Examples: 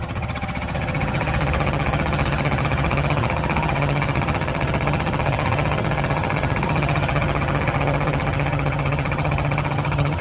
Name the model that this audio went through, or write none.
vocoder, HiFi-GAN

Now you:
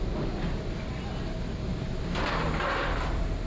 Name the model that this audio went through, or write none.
none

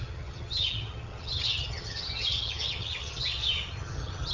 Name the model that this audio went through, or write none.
vocoder, HiFi-GAN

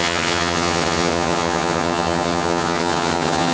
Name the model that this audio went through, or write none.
vocoder, HiFi-GAN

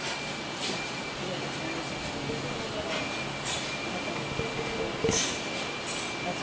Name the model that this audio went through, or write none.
none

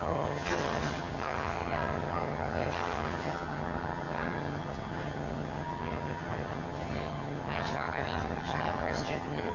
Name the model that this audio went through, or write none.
vocoder, HiFi-GAN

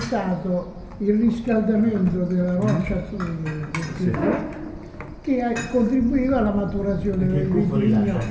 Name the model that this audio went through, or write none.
none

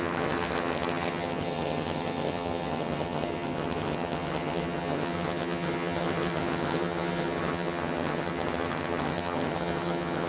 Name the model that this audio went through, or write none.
vocoder, HiFi-GAN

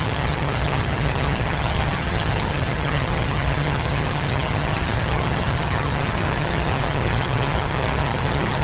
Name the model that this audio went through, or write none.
vocoder, HiFi-GAN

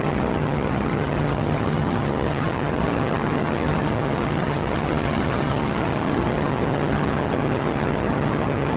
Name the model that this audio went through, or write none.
vocoder, HiFi-GAN